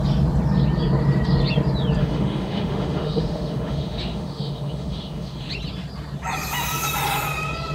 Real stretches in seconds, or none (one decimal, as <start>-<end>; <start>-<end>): 0.0-2.0; 5.5-7.7